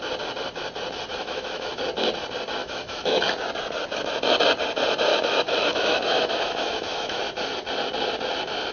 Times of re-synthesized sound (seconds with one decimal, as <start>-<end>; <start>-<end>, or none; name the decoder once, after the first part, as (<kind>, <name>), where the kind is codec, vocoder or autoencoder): 1.1-1.8 (autoencoder, DAC-VAE); 2.6-3.2; 5.1-7.2